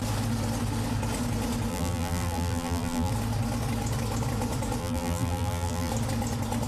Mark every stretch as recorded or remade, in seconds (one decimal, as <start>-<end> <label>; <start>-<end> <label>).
0.0-1.7 recorded; 1.7-3.1 remade; 3.1-4.8 recorded; 4.8-5.9 remade; 5.9-6.7 recorded

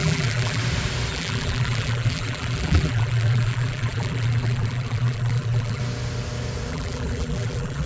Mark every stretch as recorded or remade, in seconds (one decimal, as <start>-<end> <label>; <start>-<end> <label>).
0.0-0.6 remade; 0.6-1.1 recorded; 1.1-5.8 remade; 5.8-6.7 recorded; 6.7-7.9 remade

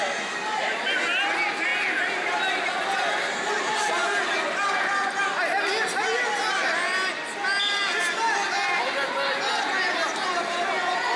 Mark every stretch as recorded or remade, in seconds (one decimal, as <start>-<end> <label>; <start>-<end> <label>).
0.0-11.2 recorded

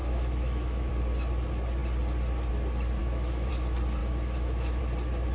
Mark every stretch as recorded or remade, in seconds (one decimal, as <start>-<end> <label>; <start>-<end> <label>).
0.0-0.9 remade; 0.9-3.0 recorded; 3.0-3.5 remade; 3.5-4.0 recorded; 4.0-4.8 remade; 4.8-5.3 recorded

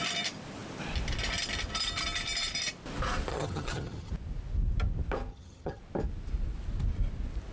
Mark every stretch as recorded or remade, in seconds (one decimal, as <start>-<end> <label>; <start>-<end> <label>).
0.0-3.3 recorded; 3.3-4.1 remade; 4.1-5.3 recorded; 5.3-5.8 remade; 5.8-7.5 recorded